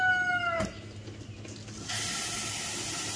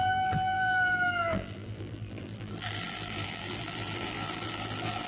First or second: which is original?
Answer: first